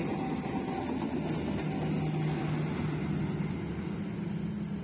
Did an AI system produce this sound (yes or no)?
no